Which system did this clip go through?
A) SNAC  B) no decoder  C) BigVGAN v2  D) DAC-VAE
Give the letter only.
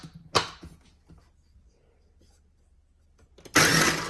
B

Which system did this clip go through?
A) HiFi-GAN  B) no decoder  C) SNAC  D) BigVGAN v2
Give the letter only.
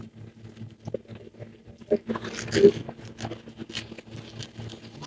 B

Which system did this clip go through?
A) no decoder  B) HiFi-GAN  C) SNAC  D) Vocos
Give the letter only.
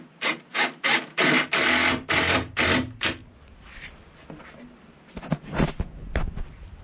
A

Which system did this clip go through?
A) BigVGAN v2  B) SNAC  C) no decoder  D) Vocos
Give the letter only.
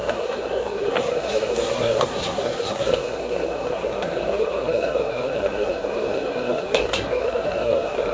B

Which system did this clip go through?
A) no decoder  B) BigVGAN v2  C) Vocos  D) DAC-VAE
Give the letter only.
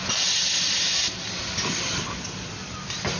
A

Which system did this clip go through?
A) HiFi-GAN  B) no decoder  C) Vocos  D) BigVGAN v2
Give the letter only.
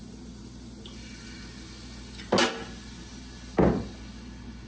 B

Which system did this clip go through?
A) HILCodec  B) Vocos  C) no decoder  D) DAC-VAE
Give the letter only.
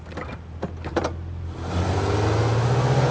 C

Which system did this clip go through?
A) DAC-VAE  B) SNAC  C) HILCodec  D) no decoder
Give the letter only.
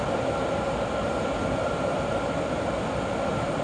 D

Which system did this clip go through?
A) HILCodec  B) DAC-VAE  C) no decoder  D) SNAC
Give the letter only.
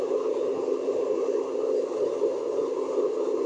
C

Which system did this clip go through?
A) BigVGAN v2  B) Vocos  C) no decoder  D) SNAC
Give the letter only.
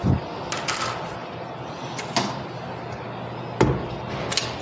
C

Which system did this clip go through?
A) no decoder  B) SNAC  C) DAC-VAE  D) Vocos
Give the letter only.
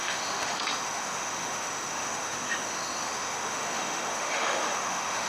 C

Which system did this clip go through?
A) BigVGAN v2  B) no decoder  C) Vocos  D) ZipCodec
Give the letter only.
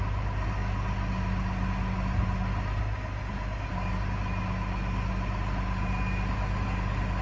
B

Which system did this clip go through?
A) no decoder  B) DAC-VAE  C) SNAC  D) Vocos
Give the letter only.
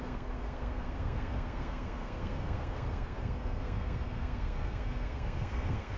C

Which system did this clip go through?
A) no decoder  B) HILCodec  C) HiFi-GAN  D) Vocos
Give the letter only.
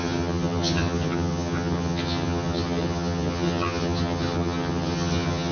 C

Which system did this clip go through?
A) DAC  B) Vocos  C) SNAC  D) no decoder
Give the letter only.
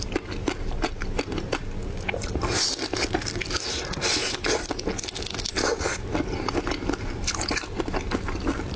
D